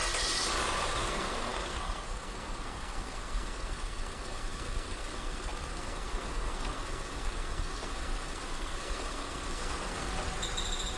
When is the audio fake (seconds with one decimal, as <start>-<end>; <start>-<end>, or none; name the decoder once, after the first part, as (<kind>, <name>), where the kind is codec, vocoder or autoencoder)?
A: 1.0-10.1 (codec, SNAC)